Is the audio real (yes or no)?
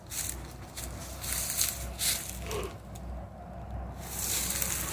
yes